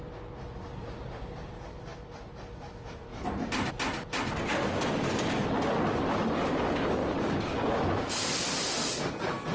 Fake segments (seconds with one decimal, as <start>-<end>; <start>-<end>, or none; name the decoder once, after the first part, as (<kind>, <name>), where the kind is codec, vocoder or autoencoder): none